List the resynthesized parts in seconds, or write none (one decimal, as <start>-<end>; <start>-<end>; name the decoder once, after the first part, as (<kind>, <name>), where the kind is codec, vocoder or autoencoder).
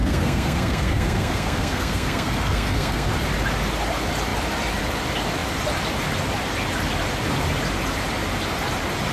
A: 0.0-3.1 (codec, SNAC)